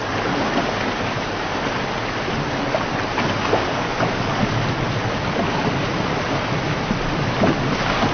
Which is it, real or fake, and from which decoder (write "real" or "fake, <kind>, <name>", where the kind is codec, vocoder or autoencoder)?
real